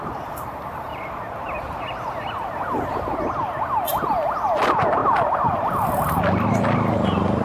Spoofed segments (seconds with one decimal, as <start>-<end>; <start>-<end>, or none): 5.0-6.2